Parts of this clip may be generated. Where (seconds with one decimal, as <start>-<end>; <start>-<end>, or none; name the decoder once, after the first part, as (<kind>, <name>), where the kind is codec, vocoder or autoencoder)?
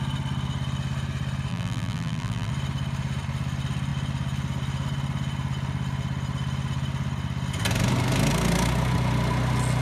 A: 1.5-2.5 (vocoder, BigVGAN v2)